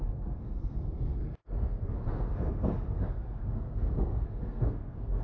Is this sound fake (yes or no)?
yes